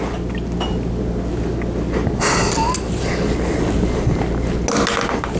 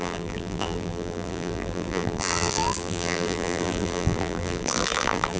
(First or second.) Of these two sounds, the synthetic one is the second